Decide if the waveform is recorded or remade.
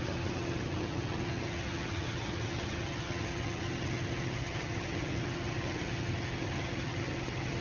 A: remade